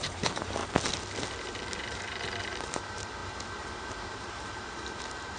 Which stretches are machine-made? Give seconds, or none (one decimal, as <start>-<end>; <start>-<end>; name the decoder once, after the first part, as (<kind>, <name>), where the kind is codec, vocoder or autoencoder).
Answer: 0.0-0.6 (vocoder, BigVGAN v2); 1.8-3.2; 4.2-5.4